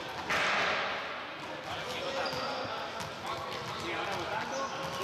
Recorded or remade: recorded